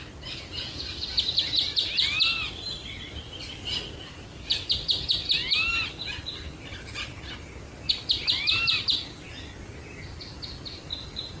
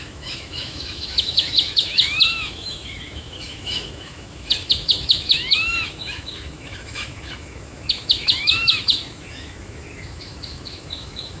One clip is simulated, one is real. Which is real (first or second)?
first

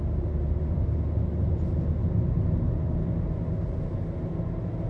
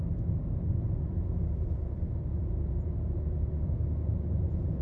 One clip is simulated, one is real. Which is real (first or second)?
first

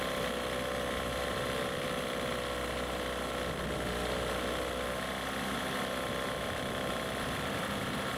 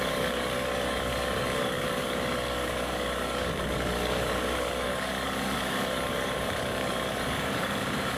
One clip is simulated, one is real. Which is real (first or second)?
first